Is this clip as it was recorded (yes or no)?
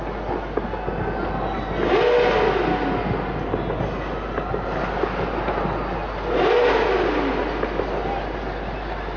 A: yes